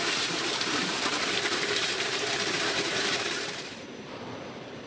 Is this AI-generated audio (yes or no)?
yes